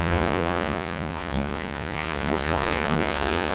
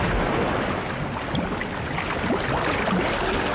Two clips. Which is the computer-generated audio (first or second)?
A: first